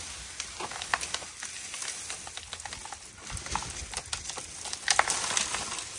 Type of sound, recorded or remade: recorded